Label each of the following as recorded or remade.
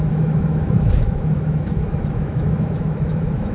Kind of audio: remade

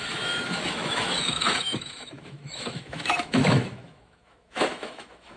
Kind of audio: remade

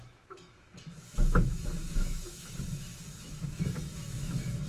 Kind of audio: remade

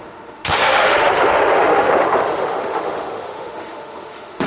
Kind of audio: remade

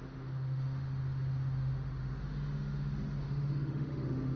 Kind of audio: remade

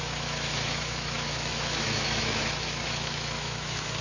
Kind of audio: remade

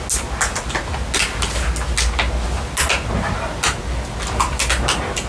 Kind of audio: recorded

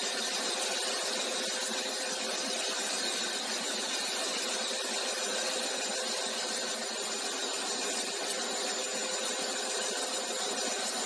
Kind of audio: recorded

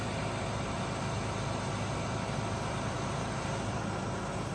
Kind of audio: recorded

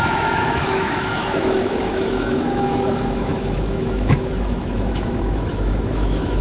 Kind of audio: remade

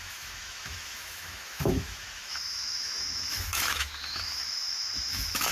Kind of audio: remade